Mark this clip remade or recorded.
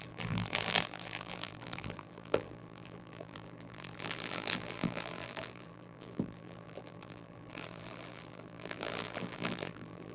remade